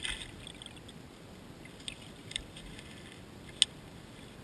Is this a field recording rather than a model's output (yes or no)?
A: yes